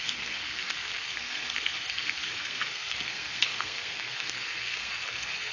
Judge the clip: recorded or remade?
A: remade